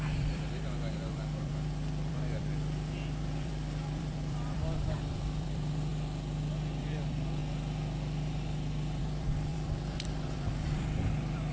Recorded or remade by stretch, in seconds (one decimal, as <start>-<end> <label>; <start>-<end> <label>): 0.0-5.9 remade; 5.9-6.8 recorded; 6.8-7.4 remade; 7.4-9.0 recorded; 9.0-11.5 remade